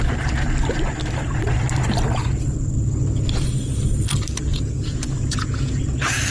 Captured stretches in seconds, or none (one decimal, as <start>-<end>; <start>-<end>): 0.0-4.5; 5.8-6.3